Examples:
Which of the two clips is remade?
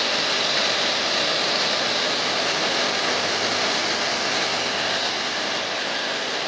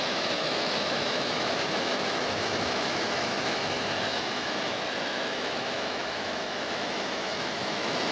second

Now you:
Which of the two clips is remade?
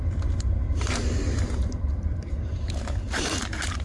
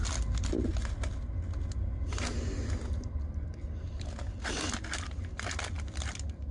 first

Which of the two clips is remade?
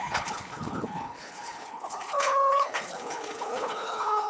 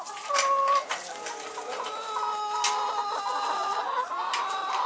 first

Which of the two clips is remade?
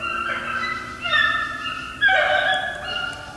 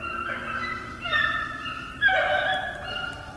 second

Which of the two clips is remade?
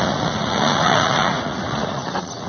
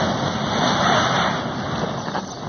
first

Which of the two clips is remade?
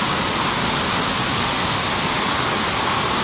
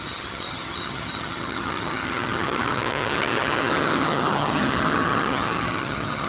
second